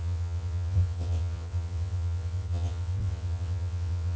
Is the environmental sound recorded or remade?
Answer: remade